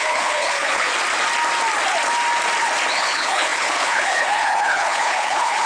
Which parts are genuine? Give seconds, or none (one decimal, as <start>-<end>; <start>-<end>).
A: 0.9-2.9